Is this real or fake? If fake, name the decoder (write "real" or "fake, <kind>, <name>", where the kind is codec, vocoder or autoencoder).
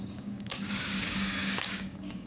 fake, codec, DAC